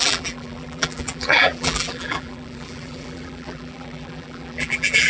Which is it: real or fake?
fake